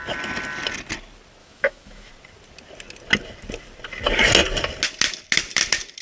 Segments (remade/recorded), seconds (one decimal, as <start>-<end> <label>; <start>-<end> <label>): 0.0-1.4 recorded; 1.4-2.1 remade; 2.1-6.0 recorded